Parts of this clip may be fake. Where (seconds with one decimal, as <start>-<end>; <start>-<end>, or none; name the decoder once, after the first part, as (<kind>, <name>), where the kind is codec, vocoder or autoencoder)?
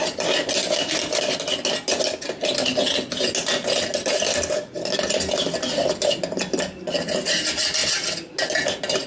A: none